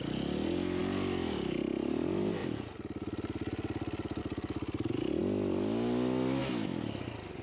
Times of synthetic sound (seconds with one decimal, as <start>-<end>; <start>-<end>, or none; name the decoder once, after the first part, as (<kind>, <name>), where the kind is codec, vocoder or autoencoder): none